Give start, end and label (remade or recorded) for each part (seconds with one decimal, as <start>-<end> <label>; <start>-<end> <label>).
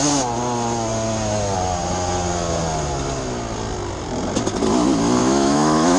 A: 0.0-5.2 recorded; 5.2-6.0 remade